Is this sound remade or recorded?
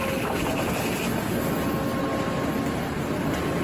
recorded